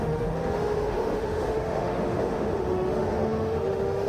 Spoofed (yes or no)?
yes